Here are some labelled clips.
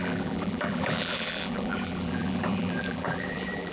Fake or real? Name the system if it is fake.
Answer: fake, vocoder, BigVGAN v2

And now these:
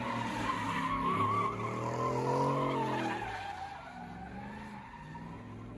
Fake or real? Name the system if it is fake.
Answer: real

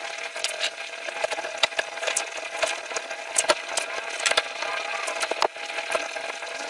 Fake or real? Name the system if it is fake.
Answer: real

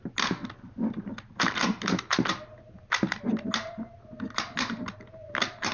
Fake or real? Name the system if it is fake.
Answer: real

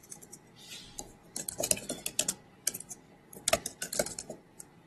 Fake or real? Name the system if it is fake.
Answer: real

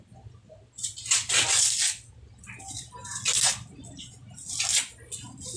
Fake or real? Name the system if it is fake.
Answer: real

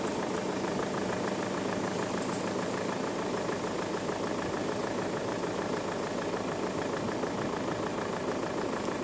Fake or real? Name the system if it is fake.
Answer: fake, vocoder, BigVGAN v2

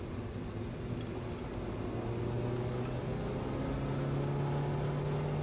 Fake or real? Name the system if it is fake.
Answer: real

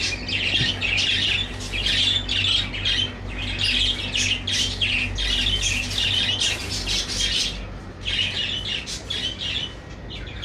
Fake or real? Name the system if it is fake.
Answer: real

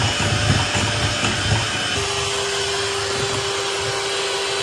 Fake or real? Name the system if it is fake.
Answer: real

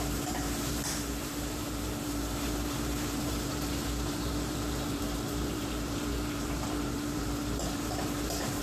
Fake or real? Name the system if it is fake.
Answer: fake, vocoder, BigVGAN v2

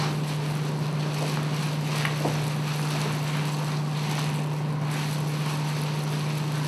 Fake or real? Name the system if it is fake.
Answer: real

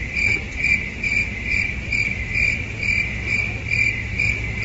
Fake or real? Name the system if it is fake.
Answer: real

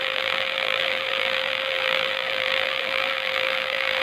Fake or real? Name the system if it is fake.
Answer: fake, vocoder, BigVGAN v2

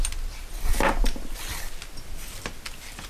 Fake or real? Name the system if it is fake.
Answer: real